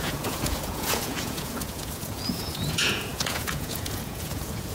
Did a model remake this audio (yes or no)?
yes